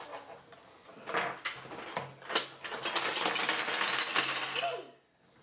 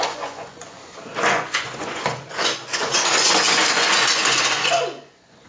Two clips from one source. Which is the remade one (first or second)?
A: second